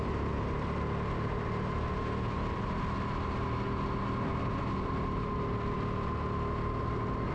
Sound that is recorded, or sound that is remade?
recorded